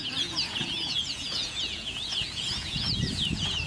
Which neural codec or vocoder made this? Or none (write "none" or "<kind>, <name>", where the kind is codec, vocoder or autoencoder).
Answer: vocoder, Vocos